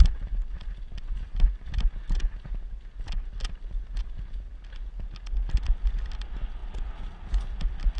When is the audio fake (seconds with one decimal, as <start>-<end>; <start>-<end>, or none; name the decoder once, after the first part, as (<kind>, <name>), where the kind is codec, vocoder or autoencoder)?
none